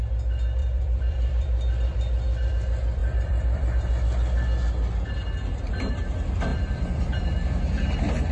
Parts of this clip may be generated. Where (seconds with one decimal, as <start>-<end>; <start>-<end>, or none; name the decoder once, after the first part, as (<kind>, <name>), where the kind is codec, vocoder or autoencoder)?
0.6-2.5 (vocoder, BigVGAN v2); 3.0-3.9; 6.5-7.2